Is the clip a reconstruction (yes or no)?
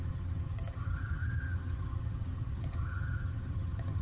yes